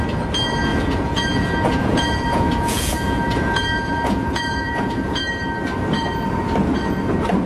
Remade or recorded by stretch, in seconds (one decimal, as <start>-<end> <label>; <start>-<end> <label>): 0.0-0.7 recorded; 0.7-5.2 remade; 5.2-7.5 recorded